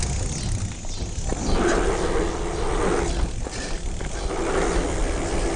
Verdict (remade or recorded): recorded